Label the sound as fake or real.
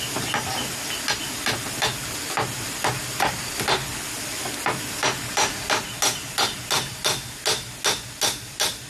real